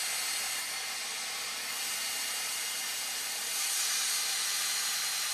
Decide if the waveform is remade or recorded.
recorded